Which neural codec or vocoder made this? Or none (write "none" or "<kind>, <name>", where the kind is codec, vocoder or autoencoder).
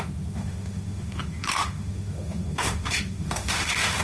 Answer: autoencoder, DAC-VAE